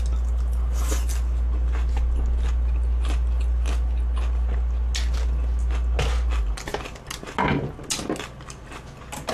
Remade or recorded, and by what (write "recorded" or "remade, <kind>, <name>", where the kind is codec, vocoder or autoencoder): recorded